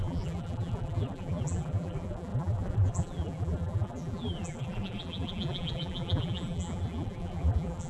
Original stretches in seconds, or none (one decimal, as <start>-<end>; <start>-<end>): none